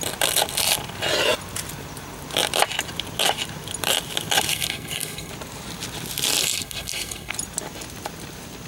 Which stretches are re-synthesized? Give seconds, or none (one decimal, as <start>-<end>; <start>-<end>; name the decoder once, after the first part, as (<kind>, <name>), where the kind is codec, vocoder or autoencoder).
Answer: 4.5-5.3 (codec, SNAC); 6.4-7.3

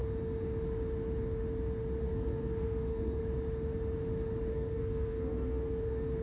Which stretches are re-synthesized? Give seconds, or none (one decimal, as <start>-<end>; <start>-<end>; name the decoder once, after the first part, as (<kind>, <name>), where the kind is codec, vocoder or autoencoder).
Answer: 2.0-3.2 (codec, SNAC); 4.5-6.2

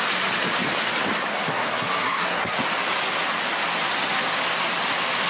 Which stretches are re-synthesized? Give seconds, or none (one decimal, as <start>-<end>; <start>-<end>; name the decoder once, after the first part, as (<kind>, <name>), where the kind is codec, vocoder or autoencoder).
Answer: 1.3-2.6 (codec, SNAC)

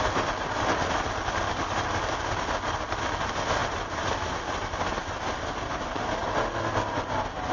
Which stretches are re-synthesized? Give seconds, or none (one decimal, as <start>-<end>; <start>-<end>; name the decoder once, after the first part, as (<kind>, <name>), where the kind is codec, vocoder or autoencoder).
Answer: none